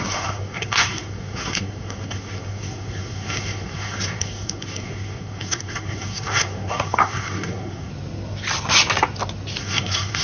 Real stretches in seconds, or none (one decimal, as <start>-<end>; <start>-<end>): 7.9-9.6